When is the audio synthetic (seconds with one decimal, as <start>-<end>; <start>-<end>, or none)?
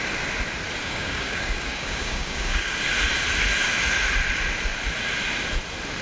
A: 0.8-2.8